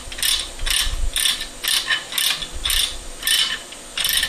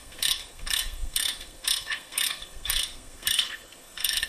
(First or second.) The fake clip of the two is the second